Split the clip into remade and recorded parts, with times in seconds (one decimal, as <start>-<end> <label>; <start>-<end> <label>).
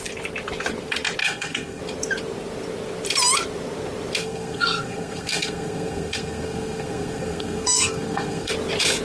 0.0-1.2 recorded; 1.2-1.8 remade; 1.8-4.2 recorded; 4.2-8.5 remade; 8.5-9.0 recorded